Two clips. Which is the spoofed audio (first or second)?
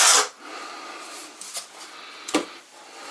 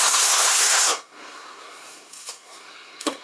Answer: second